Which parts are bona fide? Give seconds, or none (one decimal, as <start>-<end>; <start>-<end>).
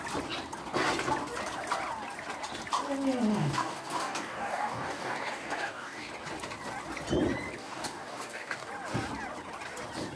0.0-3.3; 6.1-7.6; 8.7-10.2